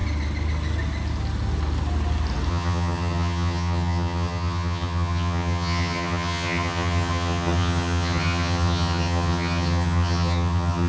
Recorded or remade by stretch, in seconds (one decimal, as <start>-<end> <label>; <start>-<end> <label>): 0.0-2.5 recorded; 2.5-10.9 remade